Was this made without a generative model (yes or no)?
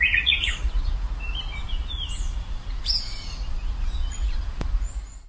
no